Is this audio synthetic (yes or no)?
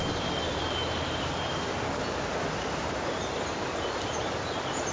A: no